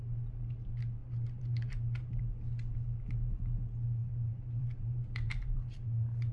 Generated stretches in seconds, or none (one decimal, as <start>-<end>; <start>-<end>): 1.0-2.2; 4.0-6.3